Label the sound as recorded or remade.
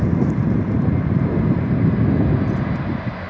recorded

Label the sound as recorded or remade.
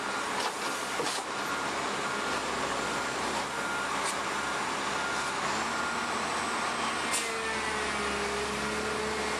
recorded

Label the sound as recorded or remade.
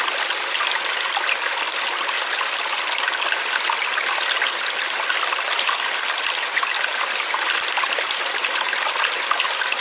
recorded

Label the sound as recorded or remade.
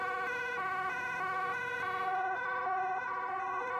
recorded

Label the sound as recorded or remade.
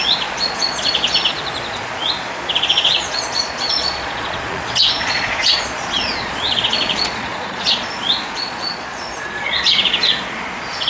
remade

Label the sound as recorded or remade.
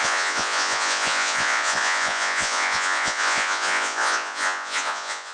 remade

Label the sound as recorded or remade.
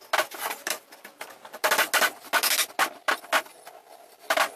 recorded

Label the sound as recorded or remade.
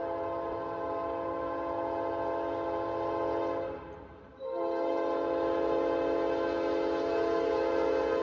recorded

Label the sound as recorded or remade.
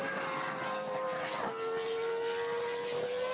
recorded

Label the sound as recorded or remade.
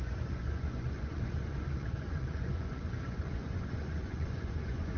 remade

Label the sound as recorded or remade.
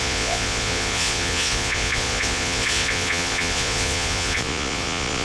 remade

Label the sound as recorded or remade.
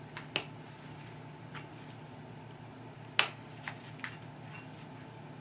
recorded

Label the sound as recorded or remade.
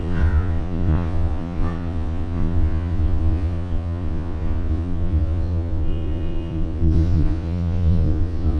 remade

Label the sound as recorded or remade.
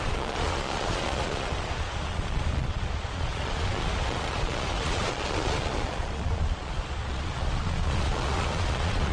remade